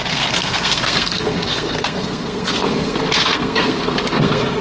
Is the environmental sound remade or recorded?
remade